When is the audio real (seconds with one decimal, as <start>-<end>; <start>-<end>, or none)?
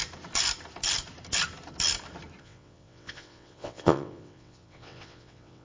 0.0-2.4